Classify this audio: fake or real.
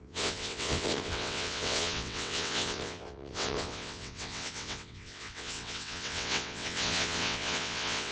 fake